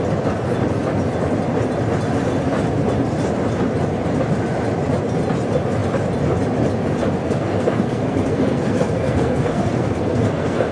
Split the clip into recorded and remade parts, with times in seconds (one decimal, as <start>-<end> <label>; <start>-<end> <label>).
0.0-7.2 recorded; 7.2-10.7 remade